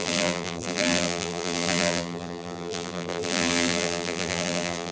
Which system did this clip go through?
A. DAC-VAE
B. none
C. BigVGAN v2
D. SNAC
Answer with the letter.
C